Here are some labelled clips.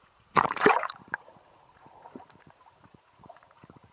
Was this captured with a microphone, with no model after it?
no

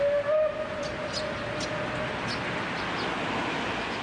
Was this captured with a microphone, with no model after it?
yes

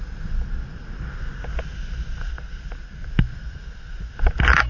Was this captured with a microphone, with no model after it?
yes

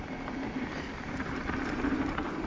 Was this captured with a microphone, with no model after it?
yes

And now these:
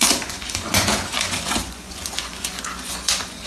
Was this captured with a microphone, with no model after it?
no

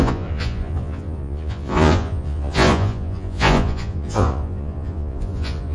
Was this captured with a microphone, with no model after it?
no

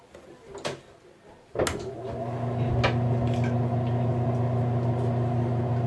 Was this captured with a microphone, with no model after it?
yes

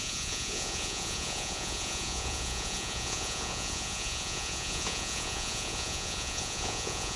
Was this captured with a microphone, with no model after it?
no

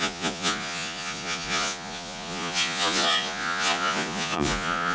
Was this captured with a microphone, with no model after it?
no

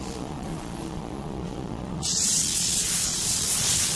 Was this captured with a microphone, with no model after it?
no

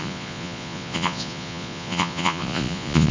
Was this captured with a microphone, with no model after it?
no